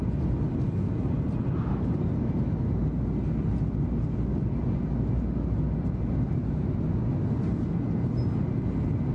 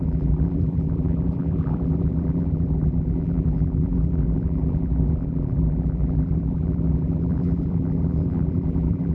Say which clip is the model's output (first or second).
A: second